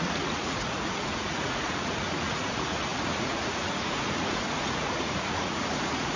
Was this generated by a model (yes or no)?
yes